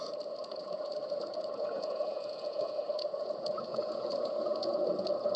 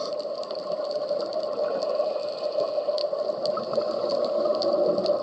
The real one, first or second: second